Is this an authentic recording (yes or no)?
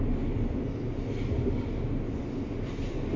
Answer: yes